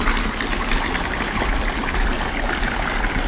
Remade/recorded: recorded